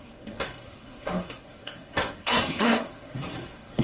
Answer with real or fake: fake